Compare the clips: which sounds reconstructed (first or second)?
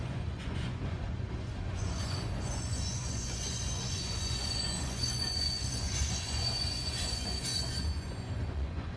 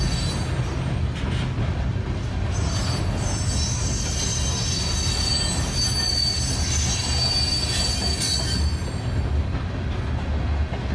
first